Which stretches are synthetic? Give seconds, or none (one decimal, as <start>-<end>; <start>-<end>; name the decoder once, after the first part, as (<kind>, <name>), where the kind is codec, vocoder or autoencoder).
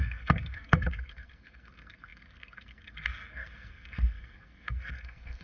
0.0-5.4 (codec, SNAC)